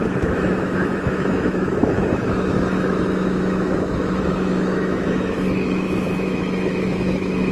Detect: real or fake fake